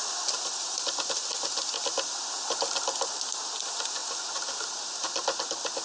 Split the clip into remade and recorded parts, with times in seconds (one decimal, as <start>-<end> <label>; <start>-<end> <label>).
0.0-5.8 recorded